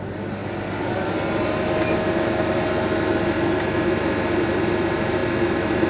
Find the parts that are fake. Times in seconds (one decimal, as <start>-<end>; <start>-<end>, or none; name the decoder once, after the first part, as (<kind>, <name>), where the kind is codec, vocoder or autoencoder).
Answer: none